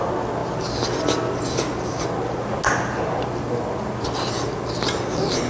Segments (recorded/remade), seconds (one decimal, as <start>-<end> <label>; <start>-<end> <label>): 0.0-5.5 recorded